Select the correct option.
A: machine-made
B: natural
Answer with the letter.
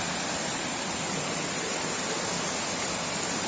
B